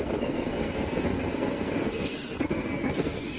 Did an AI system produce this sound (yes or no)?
yes